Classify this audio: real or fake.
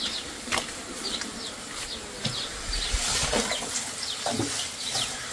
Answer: real